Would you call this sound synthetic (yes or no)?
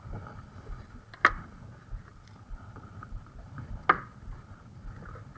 no